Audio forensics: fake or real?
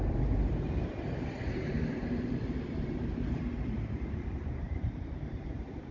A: fake